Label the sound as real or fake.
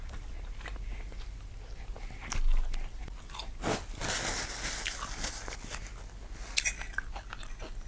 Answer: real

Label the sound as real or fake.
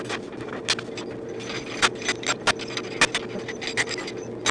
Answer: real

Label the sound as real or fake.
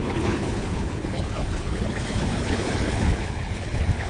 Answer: fake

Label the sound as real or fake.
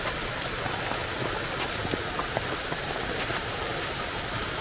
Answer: real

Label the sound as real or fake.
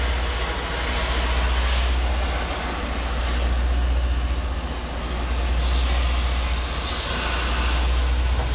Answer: real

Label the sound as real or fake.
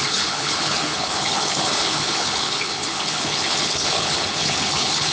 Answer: fake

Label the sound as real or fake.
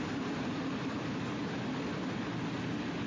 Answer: real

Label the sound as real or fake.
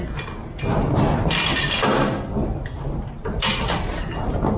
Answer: real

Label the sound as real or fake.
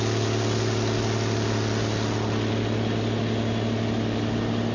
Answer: real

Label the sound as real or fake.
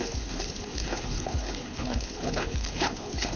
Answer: fake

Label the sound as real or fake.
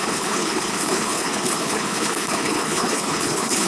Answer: fake